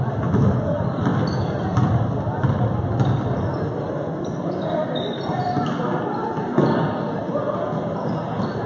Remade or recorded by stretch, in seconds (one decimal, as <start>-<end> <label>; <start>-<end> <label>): 0.0-8.7 recorded